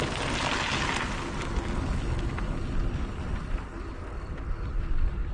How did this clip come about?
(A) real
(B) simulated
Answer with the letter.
A